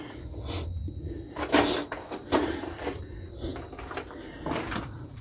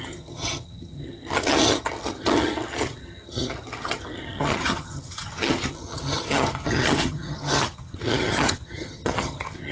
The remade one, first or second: second